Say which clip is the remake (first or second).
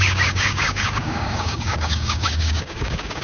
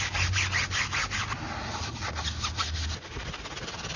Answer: first